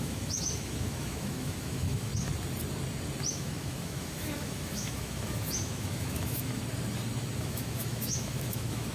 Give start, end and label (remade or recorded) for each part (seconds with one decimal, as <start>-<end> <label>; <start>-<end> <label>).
0.0-2.1 remade; 2.1-3.3 recorded; 3.3-6.6 remade; 6.6-7.4 recorded; 7.4-8.9 remade